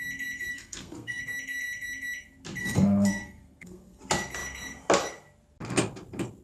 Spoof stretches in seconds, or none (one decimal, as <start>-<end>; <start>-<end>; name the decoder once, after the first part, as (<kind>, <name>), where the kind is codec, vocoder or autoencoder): 0.5-1.2 (codec, SNAC); 2.6-4.0

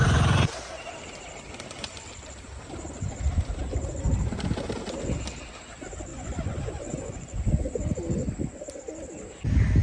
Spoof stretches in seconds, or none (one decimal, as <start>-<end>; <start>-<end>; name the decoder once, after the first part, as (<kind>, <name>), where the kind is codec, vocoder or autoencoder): 0.0-0.5 (vocoder, Vocos); 6.1-7.5

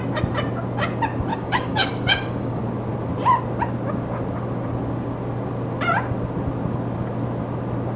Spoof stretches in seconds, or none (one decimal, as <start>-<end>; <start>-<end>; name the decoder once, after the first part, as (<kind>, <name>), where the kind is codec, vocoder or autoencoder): 1.3-2.6 (codec, DAC)

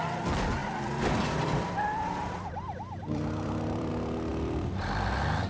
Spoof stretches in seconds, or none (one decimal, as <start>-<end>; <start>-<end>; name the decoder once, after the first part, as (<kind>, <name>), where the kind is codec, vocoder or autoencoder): 0.6-3.9 (vocoder, BigVGAN v2); 4.3-5.5

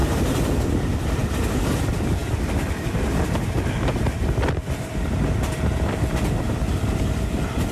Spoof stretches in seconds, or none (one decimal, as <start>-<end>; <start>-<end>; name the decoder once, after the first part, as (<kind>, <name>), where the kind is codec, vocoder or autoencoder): 0.0-0.7 (vocoder, BigVGAN v2)